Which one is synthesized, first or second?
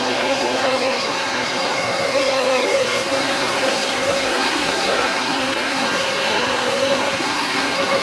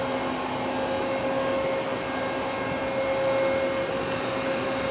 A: first